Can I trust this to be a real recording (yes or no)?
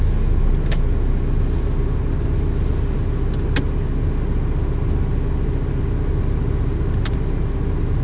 yes